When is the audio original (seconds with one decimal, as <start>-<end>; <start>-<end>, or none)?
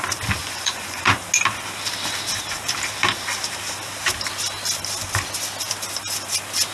0.0-0.4; 1.2-6.7